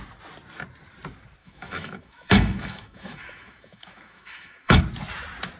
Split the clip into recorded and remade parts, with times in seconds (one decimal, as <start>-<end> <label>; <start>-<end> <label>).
0.0-1.4 recorded; 1.4-4.8 remade; 4.8-5.6 recorded